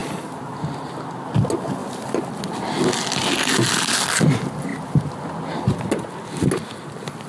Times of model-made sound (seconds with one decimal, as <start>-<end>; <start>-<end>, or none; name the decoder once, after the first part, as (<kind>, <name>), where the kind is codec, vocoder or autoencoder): 0.0-1.4 (vocoder, BigVGAN v2); 1.8-2.4